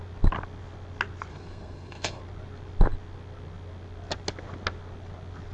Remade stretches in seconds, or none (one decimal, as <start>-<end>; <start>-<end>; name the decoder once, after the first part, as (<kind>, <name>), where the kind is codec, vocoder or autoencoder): 1.3-2.2 (codec, SNAC)